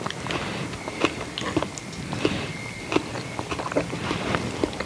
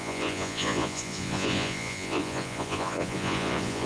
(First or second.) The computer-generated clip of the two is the second